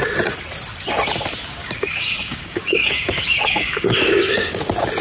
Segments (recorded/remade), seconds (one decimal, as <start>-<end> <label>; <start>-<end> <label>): 0.0-1.6 recorded; 1.6-4.6 remade; 4.6-5.0 recorded